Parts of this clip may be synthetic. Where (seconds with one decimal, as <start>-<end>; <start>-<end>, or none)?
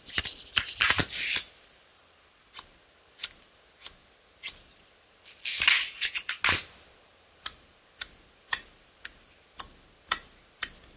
none